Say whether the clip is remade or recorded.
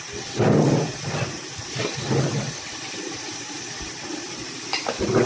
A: recorded